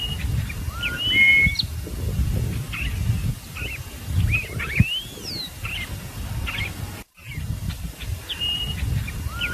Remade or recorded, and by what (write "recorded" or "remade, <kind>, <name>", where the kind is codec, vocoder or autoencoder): recorded